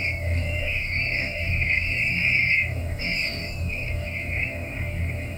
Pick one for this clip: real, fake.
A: fake